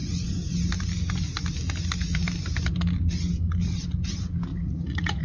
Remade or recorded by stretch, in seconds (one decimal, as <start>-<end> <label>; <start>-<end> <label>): 0.0-4.5 recorded; 4.5-5.2 remade